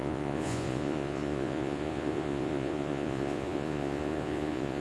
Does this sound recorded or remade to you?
remade